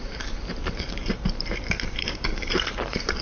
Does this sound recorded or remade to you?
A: remade